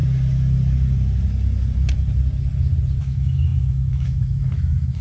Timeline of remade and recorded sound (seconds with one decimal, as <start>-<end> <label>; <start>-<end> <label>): 0.0-3.0 recorded; 3.0-5.0 remade